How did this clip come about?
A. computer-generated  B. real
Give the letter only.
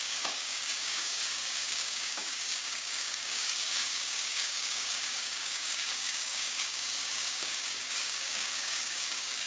A